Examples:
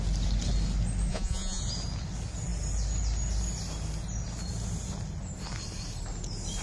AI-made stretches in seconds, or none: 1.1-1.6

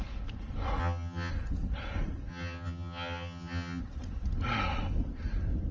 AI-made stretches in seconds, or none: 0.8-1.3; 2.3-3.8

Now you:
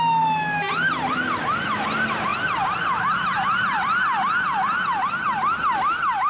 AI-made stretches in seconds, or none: none

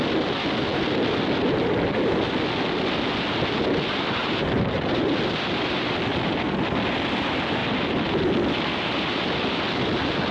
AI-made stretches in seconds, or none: 4.2-5.0

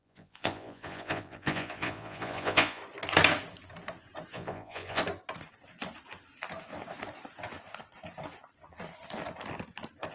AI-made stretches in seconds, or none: 0.0-2.8; 4.3-5.0

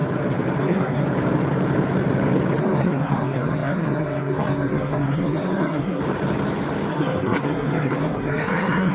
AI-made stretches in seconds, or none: 0.6-1.0; 2.6-6.0; 6.9-8.9

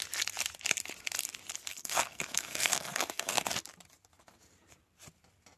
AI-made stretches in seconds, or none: 1.7-3.5